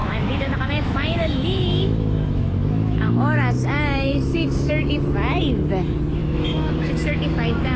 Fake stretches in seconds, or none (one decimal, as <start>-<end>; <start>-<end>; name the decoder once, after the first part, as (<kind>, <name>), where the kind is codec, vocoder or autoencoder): 0.0-4.7 (autoencoder, DAC-VAE); 6.2-7.8